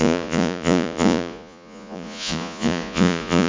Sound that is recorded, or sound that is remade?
remade